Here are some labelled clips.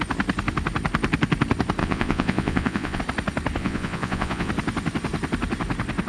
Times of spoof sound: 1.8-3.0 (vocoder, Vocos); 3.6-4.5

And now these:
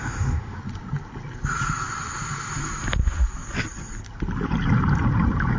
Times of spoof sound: 0.0-0.6 (autoencoder, DAC-VAE)

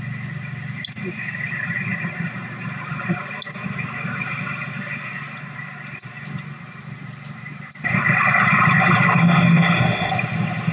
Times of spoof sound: 9.2-10.1 (autoencoder, DAC-VAE)

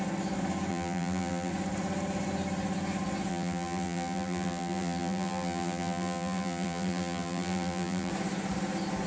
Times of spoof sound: 0.7-1.5 (vocoder, BigVGAN v2); 3.3-8.1